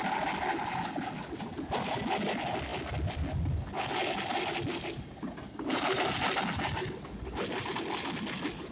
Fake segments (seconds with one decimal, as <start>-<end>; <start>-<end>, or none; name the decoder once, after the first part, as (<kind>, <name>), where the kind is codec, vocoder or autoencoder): none